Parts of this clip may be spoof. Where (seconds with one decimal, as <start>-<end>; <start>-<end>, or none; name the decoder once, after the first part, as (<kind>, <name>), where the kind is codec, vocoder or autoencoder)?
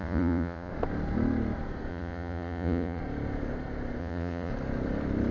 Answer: 0.0-0.7 (vocoder, Vocos); 1.9-3.0; 4.0-4.5